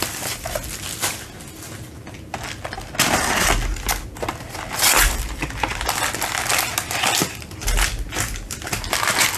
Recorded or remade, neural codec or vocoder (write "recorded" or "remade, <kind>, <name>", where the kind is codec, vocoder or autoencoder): recorded